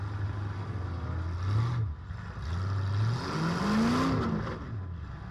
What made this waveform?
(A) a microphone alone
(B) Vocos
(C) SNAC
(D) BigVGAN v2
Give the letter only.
A